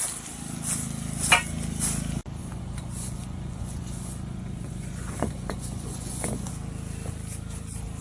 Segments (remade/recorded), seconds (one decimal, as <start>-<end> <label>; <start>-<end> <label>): 0.0-2.4 recorded; 2.4-6.5 remade; 6.5-8.0 recorded